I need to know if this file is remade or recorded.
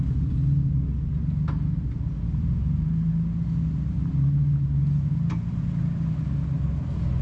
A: recorded